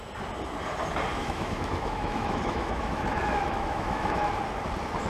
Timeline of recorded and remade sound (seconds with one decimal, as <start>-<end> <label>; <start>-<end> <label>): 0.0-1.2 recorded; 1.2-4.3 remade; 4.3-5.1 recorded